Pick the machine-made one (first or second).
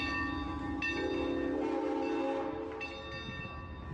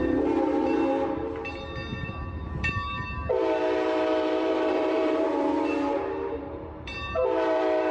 second